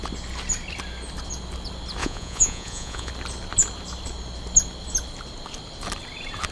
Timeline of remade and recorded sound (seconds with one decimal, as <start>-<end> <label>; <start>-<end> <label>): 0.0-2.0 recorded; 2.0-3.1 remade; 3.1-6.5 recorded